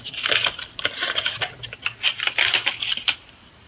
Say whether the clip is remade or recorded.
recorded